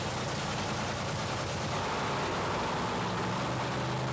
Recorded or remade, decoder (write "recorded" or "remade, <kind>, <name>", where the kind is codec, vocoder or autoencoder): recorded